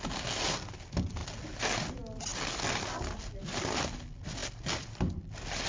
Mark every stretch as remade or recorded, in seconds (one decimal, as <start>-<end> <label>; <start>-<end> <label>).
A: 0.0-5.7 recorded